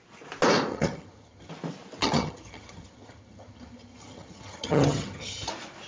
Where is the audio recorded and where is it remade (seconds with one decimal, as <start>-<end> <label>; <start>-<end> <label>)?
0.0-0.7 recorded; 0.7-1.5 remade; 1.5-2.0 recorded; 2.0-5.5 remade; 5.5-5.9 recorded